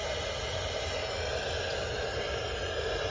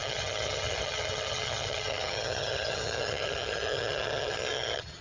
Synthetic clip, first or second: second